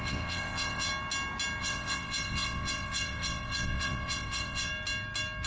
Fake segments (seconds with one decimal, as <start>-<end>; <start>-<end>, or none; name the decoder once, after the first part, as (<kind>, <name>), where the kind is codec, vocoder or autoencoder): 0.0-0.9 (vocoder, WaveNeXt); 1.6-4.7